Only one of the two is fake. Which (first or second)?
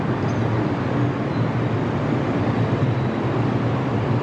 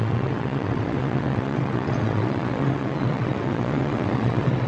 second